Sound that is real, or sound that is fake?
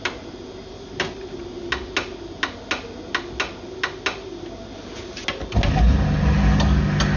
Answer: real